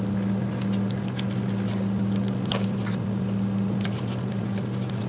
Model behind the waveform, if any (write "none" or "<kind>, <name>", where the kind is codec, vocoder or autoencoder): none